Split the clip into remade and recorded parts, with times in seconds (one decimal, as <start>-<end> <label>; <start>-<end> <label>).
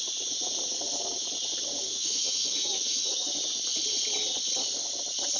0.0-1.9 recorded; 1.9-3.3 remade; 3.3-5.4 recorded